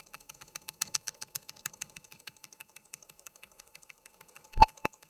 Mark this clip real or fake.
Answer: fake